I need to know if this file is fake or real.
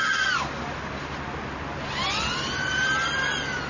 real